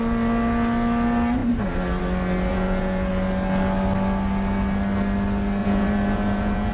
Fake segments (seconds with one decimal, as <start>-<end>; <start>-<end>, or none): 2.5-3.1; 5.6-6.7